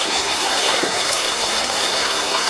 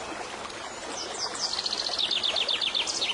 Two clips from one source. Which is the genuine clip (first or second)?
second